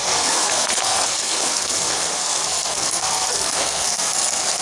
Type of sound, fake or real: fake